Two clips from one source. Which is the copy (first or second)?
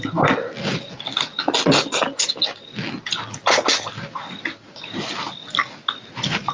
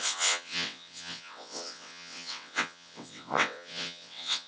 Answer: second